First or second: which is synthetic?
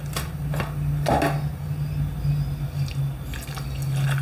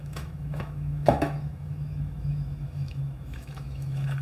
second